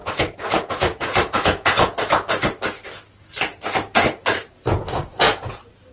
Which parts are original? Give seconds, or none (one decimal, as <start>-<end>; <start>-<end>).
2.1-3.5